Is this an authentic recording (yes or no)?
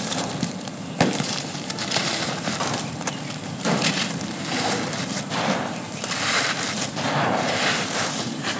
no